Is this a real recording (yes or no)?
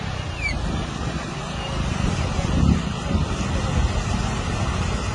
yes